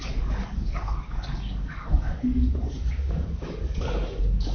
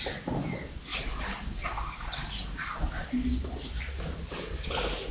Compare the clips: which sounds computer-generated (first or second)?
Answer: first